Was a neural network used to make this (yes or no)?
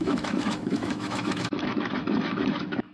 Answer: yes